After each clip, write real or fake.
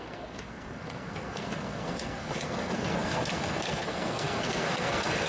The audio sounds fake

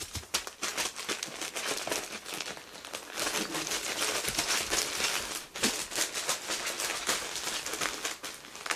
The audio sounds real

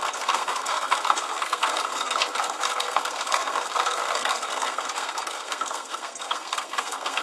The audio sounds fake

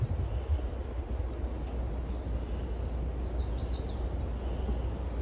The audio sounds real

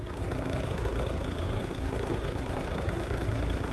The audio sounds fake